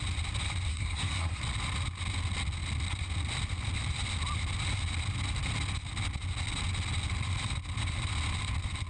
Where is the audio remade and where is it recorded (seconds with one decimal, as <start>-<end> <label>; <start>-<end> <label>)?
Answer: 0.0-0.7 recorded; 0.7-1.4 remade; 1.4-8.9 recorded